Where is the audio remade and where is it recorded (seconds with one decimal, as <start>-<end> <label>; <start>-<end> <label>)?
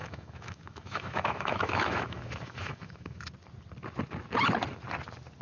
0.0-3.2 remade; 3.2-5.4 recorded